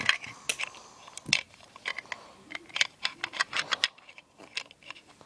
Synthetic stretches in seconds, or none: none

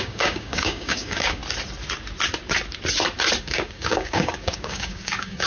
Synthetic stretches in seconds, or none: 0.0-1.4 (codec, DAC); 3.4-5.5

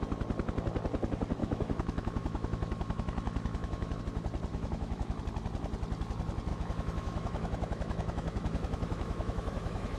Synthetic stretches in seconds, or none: 1.4-4.0 (autoencoder, DAC-VAE); 4.5-5.2; 6.5-10.0

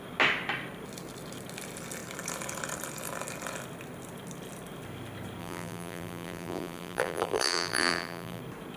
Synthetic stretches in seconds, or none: 5.4-8.4 (vocoder, BigVGAN v2)

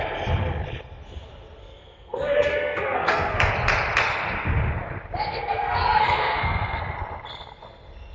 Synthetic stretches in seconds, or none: 1.6-3.5 (codec, SNAC); 5.3-6.8

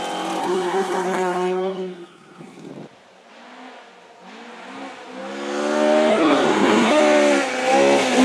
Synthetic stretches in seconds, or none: 0.4-2.7 (codec, SNAC); 6.1-7.0